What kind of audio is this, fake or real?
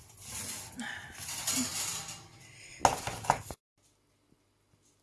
real